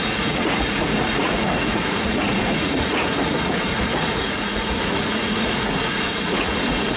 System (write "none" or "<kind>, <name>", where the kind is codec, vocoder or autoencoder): vocoder, Vocos